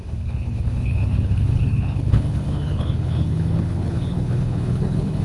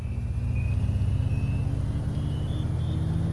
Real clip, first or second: second